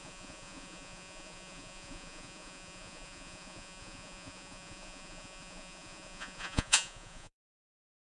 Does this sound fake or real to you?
fake